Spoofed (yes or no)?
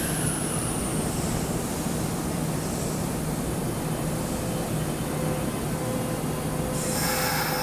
no